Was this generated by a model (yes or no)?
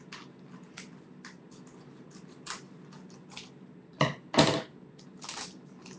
no